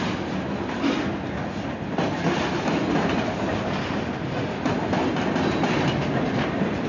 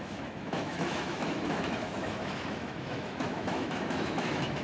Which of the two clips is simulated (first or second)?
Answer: second